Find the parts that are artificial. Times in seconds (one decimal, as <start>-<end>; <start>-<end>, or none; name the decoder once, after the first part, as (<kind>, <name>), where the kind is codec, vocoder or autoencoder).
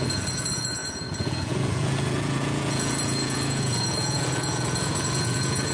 0.0-5.7 (vocoder, Vocos)